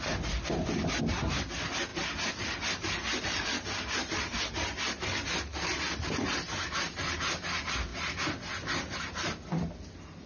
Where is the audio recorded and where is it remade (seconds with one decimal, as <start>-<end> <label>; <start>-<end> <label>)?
0.0-10.3 recorded